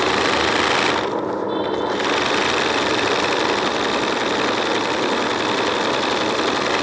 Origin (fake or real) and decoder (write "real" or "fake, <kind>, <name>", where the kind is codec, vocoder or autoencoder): real